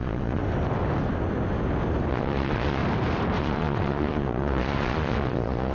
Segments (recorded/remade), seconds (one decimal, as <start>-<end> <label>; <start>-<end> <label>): 0.0-0.4 remade; 0.4-2.1 recorded; 2.1-2.8 remade; 2.8-3.4 recorded; 3.4-5.7 remade